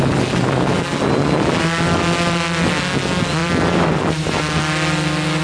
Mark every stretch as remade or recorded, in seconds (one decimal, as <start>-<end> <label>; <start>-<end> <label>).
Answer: 0.0-3.4 recorded; 3.4-4.4 remade; 4.4-5.4 recorded

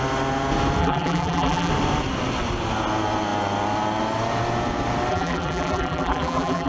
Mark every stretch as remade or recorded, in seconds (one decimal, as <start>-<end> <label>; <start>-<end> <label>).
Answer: 0.0-0.8 recorded; 0.8-1.7 remade; 1.7-5.1 recorded; 5.1-6.7 remade

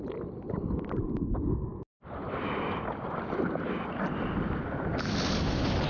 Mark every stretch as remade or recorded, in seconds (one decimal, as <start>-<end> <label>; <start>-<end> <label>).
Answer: 0.0-5.9 recorded

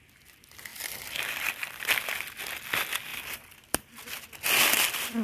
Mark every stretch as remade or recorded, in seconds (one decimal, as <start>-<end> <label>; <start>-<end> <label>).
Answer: 0.0-0.7 recorded; 0.7-2.4 remade; 2.4-3.1 recorded; 3.1-3.9 remade; 3.9-5.2 recorded